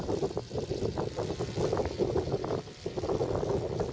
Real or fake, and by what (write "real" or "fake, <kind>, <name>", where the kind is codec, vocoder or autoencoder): real